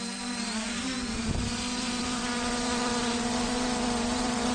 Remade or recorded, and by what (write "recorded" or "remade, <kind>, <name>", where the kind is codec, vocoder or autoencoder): remade, vocoder, BigVGAN v2